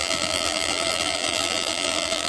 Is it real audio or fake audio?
fake